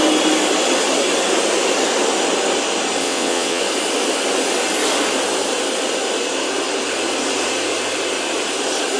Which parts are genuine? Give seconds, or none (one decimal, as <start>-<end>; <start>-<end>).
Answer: 0.0-3.0; 3.6-9.0

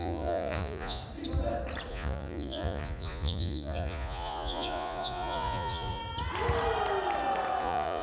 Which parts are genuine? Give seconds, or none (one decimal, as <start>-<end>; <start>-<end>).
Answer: 1.0-1.9; 6.0-7.6

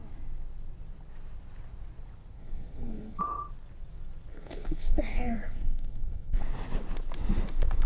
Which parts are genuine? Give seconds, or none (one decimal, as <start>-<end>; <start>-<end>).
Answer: 0.0-2.4; 3.2-4.3; 6.4-7.9

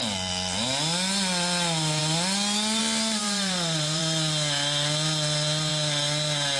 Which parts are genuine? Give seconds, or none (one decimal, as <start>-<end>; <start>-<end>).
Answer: 0.0-3.2; 4.0-6.6